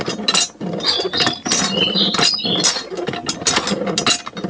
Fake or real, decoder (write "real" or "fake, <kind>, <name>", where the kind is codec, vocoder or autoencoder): real